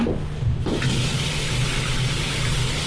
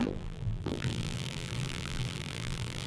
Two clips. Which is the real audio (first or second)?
first